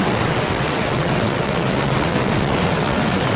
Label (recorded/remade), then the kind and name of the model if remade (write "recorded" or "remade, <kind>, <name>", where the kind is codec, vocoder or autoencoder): remade, vocoder, WaveNeXt